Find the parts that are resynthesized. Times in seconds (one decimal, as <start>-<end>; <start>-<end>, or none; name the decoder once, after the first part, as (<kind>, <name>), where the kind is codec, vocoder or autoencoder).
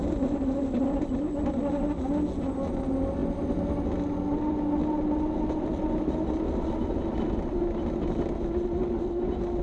none